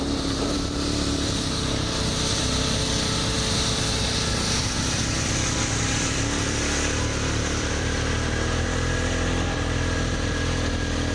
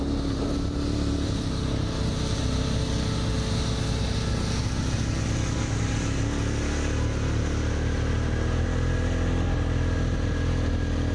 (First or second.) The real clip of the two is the second